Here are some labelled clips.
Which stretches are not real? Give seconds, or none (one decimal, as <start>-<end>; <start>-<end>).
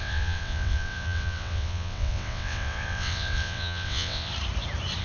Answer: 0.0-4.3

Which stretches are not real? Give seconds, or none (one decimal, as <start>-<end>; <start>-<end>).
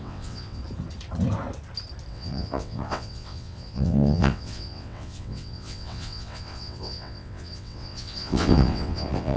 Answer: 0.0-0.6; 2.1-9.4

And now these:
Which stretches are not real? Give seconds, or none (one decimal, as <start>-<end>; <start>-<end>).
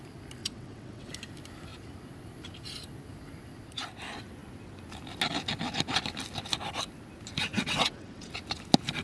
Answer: 0.4-1.1; 7.5-8.3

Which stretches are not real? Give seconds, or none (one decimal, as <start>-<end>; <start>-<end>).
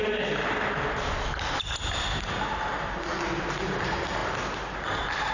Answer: none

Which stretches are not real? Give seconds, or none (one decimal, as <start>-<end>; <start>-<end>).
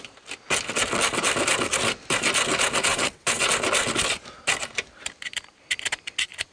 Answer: 2.9-3.5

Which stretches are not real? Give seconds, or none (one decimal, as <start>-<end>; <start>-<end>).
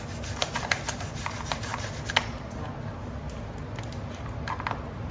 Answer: none